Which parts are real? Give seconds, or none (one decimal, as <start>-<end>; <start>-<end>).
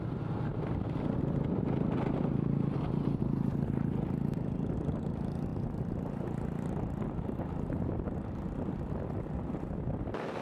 0.0-10.4